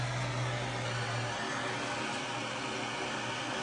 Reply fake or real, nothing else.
real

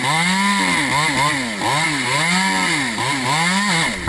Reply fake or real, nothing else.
real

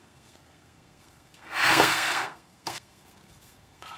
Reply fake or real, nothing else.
fake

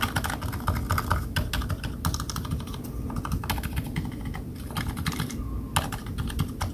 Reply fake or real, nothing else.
real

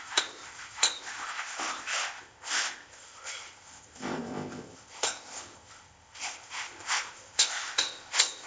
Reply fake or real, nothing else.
fake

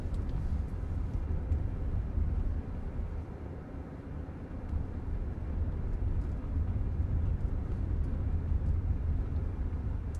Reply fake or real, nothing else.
fake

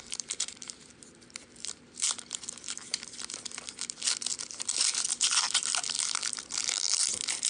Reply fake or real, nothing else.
fake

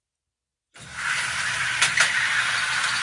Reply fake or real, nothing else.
real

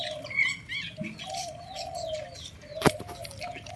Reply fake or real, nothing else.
real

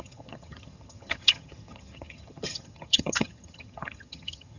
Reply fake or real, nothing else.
fake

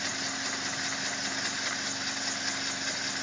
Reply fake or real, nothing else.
real